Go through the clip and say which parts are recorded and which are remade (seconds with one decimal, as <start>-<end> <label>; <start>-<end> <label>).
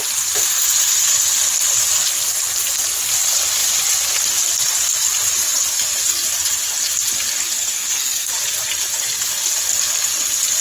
0.0-7.6 recorded; 7.6-8.3 remade; 8.3-10.6 recorded